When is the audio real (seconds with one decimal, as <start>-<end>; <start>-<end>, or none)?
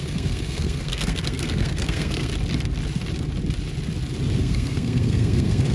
2.3-4.4